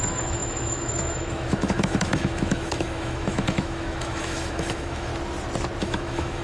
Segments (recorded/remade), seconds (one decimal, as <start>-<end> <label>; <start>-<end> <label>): 0.0-5.1 remade; 5.1-5.8 recorded; 5.8-6.4 remade